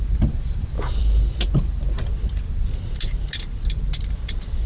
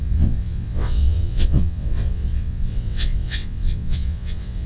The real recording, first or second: first